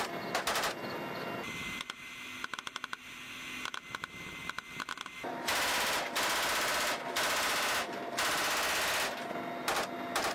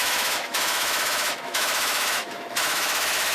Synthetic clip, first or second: second